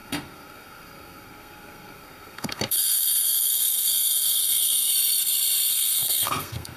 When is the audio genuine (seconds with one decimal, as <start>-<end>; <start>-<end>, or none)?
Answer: 4.9-5.7